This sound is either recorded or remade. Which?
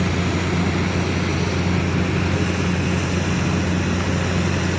recorded